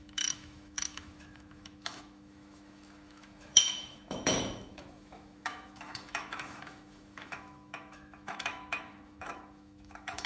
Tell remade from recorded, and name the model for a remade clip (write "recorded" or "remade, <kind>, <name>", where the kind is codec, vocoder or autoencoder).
remade, autoencoder, DAC-VAE